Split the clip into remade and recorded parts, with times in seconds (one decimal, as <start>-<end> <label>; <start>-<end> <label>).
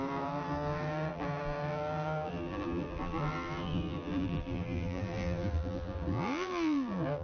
0.0-7.2 remade